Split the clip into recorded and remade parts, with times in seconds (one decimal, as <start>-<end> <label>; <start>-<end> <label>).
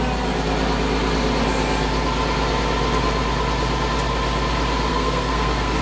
0.0-4.9 recorded; 4.9-5.8 remade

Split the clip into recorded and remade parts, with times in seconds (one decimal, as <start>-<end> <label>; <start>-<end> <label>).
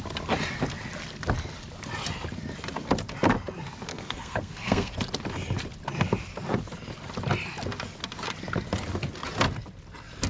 0.0-3.9 recorded; 3.9-4.9 remade; 4.9-10.3 recorded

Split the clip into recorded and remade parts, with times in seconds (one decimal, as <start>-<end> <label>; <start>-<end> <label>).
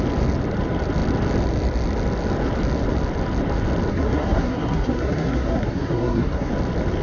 0.0-3.9 recorded; 3.9-6.5 remade; 6.5-7.0 recorded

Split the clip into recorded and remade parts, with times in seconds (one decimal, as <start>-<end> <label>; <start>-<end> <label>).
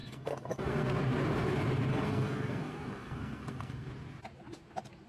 0.0-0.9 remade; 0.9-1.9 recorded; 1.9-3.9 remade; 3.9-5.1 recorded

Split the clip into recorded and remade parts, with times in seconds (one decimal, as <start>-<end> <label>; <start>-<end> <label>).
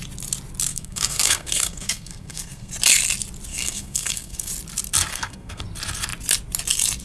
0.0-0.7 recorded; 0.7-2.7 remade; 2.7-3.5 recorded; 3.5-4.5 remade; 4.5-5.1 recorded; 5.1-5.6 remade; 5.6-7.0 recorded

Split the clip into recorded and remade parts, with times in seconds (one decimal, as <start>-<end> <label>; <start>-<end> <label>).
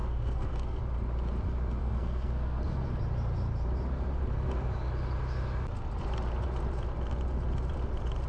0.0-0.8 remade; 0.8-1.8 recorded; 1.8-3.0 remade; 3.0-8.3 recorded